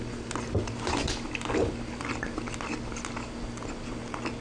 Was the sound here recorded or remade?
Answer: recorded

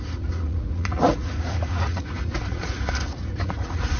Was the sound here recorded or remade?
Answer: remade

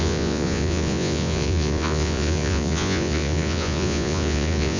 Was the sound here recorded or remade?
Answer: remade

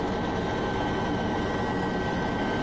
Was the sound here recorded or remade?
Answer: recorded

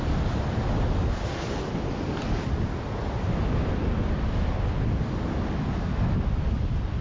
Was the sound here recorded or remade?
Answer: recorded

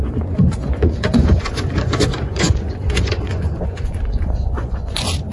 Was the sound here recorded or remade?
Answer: remade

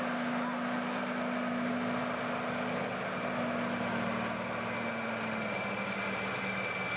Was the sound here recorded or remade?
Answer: recorded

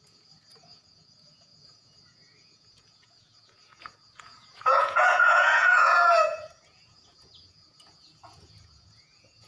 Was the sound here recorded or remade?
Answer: remade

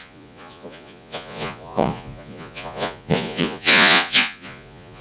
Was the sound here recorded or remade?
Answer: remade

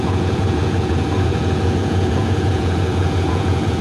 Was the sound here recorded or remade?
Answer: remade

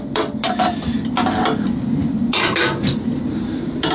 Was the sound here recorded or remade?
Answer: recorded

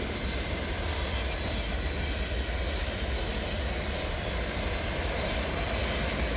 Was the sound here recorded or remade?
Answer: recorded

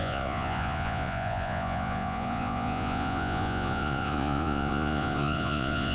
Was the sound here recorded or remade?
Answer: remade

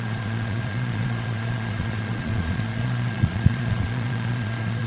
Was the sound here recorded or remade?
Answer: remade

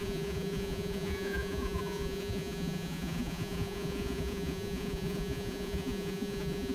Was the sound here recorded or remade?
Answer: remade